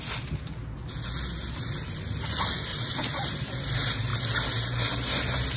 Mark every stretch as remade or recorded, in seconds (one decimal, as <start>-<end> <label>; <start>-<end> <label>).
0.0-2.7 recorded; 2.7-3.5 remade; 3.5-5.6 recorded